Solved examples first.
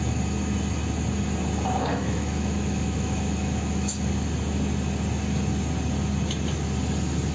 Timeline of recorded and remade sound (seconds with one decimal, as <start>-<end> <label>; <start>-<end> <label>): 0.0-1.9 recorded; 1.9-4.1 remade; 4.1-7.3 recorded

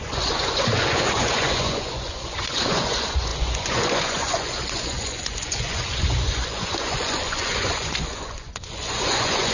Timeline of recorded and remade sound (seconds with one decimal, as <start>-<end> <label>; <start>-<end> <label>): 0.0-9.5 remade

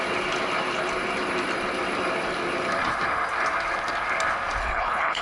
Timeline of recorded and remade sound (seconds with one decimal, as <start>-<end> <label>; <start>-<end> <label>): 0.0-4.6 recorded; 4.6-5.2 remade

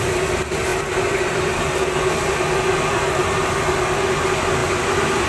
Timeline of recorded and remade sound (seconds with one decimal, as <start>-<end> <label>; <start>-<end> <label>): 0.0-5.3 recorded

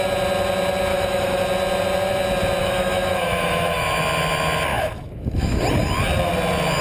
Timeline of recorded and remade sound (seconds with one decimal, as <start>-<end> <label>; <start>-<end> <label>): 0.0-0.9 recorded; 0.9-1.4 remade; 1.4-2.6 recorded; 2.6-4.0 remade; 4.0-4.7 recorded; 4.7-5.6 remade; 5.6-6.8 recorded